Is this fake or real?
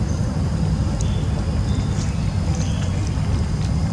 real